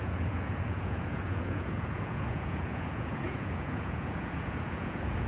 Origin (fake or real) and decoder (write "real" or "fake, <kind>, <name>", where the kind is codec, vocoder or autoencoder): fake, vocoder, Vocos